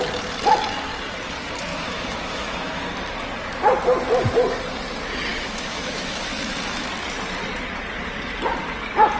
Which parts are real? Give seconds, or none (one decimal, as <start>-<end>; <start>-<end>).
0.0-1.7; 2.8-5.3; 6.9-9.2